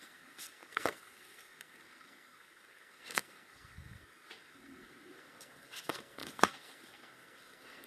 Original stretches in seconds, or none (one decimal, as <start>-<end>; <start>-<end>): none

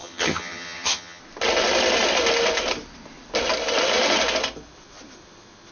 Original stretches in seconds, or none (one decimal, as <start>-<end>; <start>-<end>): 1.2-5.7

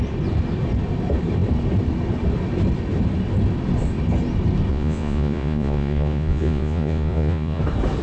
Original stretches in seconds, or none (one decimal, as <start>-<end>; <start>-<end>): 0.0-4.7; 7.6-8.0

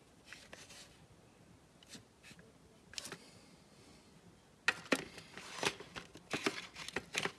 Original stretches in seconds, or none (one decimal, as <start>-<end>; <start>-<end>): 0.0-7.4

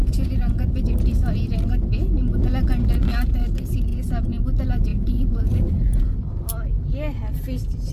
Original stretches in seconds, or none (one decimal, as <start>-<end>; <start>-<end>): 0.7-3.9; 4.4-4.9; 6.2-7.9